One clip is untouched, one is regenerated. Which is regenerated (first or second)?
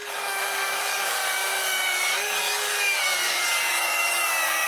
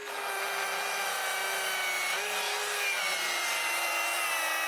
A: first